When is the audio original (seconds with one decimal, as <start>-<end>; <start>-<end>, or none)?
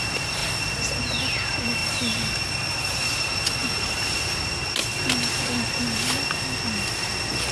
0.0-7.5